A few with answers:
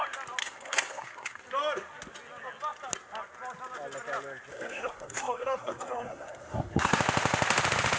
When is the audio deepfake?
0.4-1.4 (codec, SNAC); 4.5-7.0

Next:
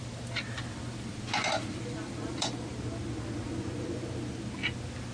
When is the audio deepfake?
0.0-2.5 (vocoder, BigVGAN v2)

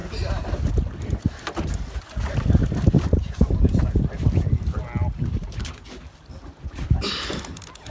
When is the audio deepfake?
none

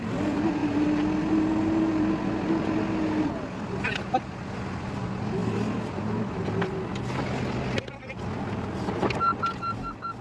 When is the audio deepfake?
none

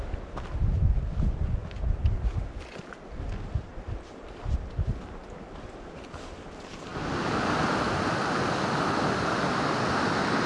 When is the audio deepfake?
3.7-4.6 (vocoder, BigVGAN v2)

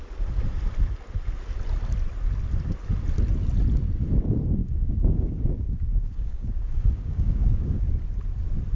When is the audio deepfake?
4.6-7.9 (codec, DAC)

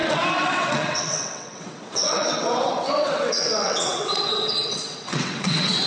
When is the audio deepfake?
0.0-5.9 (vocoder, WaveNeXt)